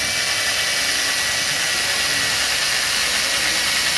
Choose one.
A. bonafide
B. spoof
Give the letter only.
A